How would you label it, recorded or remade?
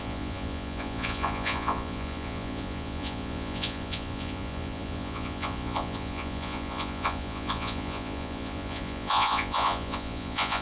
remade